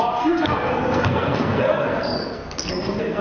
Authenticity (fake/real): fake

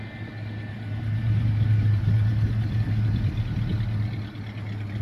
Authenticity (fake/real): real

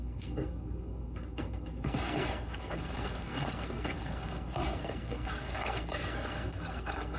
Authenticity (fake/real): fake